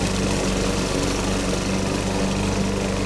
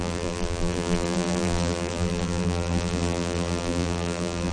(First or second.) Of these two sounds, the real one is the first